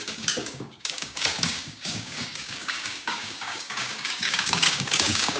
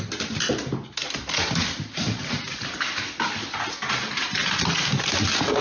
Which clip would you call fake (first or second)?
first